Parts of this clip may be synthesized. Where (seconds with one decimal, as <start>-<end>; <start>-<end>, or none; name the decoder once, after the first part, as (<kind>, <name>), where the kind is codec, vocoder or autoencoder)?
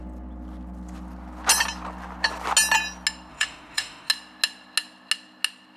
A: 3.3-4.1 (autoencoder, DAC-VAE)